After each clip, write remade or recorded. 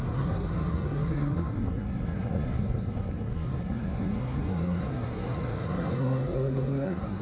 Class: remade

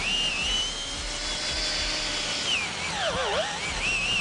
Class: recorded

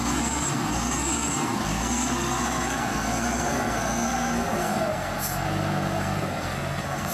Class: remade